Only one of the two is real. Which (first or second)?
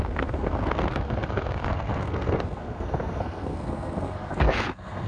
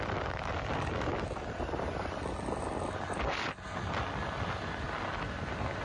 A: second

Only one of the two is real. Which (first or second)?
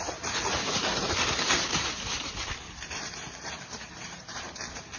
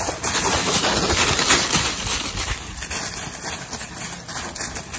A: second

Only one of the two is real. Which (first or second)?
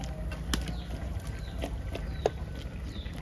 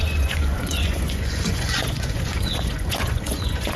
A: first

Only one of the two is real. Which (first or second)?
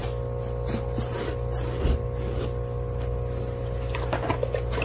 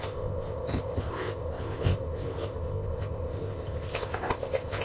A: first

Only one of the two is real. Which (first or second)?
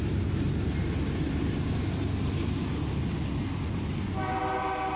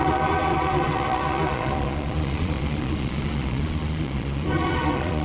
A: first